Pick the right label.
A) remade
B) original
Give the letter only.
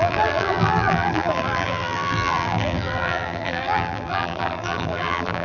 A